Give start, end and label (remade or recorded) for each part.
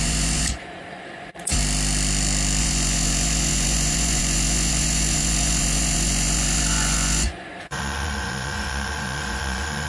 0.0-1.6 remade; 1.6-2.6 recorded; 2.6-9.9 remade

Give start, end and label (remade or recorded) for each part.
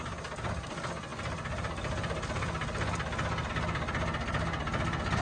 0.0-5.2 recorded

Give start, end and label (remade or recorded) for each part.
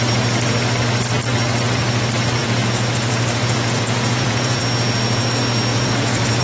0.0-2.4 recorded; 2.4-4.6 remade; 4.6-5.7 recorded; 5.7-6.4 remade